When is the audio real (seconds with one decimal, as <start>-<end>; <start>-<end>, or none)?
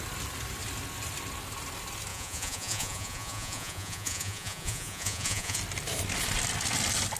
0.0-2.1; 5.6-7.2